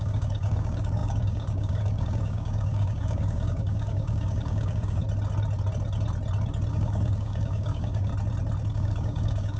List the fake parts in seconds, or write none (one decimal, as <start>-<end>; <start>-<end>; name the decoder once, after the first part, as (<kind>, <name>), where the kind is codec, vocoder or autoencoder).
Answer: 0.0-5.0 (codec, DAC); 6.7-8.1; 8.7-9.6